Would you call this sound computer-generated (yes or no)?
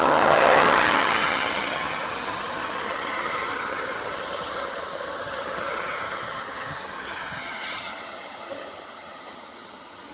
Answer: yes